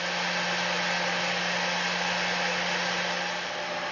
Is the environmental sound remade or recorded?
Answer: recorded